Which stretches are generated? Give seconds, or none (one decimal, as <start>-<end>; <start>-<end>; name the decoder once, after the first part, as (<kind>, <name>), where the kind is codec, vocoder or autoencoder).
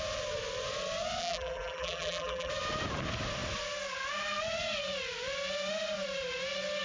1.2-2.5 (vocoder, BigVGAN v2)